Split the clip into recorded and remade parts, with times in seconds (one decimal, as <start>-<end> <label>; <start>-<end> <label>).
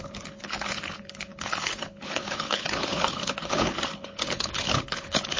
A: 0.0-5.4 remade